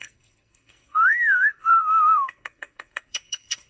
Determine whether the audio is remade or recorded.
remade